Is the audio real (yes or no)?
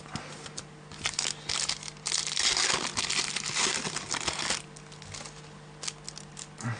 yes